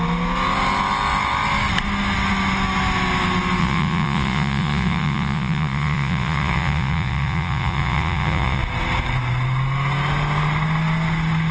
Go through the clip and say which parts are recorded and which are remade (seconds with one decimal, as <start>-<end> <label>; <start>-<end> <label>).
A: 0.0-3.6 recorded; 3.6-8.6 remade; 8.6-11.5 recorded